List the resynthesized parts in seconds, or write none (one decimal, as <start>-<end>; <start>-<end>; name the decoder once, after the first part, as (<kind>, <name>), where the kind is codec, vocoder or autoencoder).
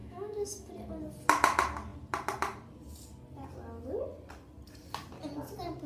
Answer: 0.0-0.7 (autoencoder, DAC-VAE)